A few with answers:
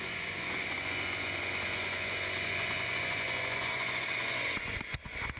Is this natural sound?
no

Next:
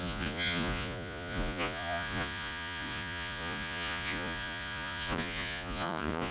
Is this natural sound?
no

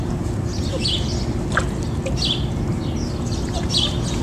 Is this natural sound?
yes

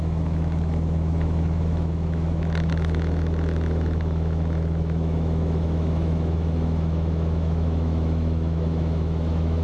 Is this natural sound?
no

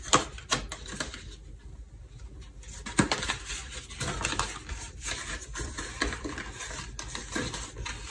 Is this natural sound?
yes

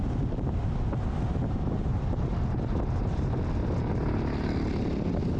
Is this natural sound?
yes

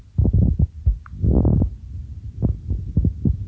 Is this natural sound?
yes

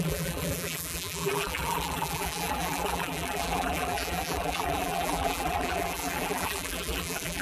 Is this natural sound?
no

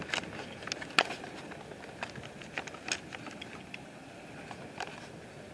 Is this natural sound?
yes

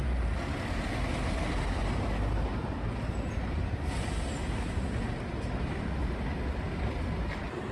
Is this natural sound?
yes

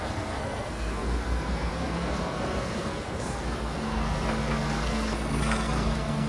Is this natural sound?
no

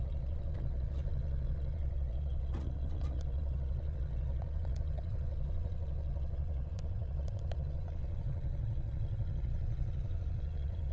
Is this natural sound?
no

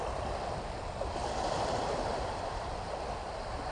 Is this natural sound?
yes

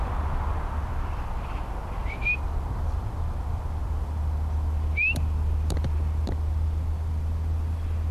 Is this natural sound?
no